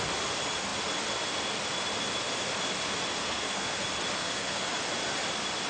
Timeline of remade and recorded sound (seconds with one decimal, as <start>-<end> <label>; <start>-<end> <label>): 0.0-3.2 recorded; 3.2-3.7 remade; 3.7-4.2 recorded; 4.2-4.7 remade; 4.7-5.7 recorded